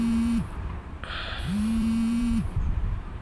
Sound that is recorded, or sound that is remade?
remade